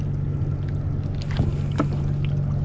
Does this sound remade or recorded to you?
recorded